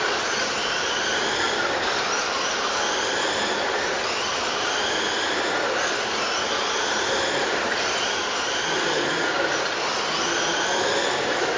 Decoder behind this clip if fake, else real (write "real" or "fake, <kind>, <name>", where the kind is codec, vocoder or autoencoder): real